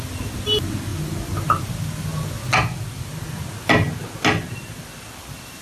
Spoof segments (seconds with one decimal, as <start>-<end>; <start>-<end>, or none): none